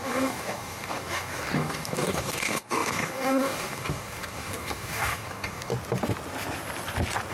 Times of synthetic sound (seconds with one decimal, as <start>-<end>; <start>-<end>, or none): 0.0-5.7